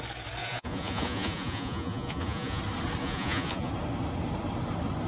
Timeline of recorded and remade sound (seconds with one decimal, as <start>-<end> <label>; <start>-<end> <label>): 0.0-0.4 recorded; 0.4-2.6 remade; 2.6-3.0 recorded; 3.0-3.7 remade; 3.7-5.1 recorded